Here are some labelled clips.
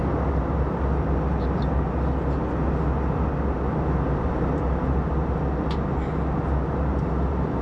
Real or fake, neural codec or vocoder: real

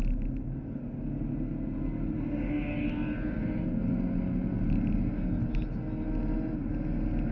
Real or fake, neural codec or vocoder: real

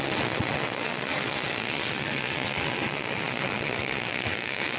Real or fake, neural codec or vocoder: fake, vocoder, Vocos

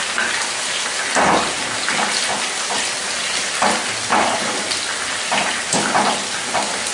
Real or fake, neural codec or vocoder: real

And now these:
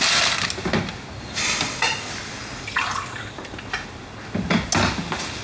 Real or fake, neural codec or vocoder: real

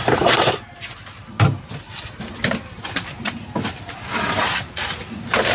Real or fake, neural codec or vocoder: real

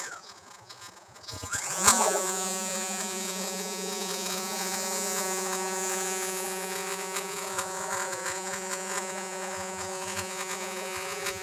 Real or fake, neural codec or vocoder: fake, vocoder, Vocos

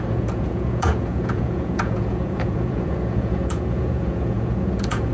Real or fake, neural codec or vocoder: fake, vocoder, Vocos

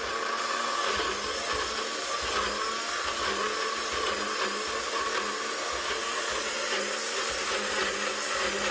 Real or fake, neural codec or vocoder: real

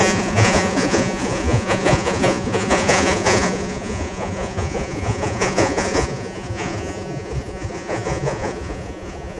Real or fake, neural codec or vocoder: fake, vocoder, Vocos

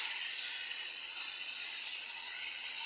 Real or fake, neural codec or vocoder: fake, vocoder, Vocos